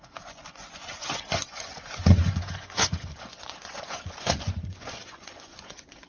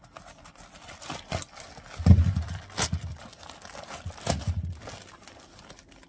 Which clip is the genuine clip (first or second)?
second